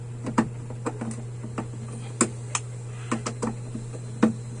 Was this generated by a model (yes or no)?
no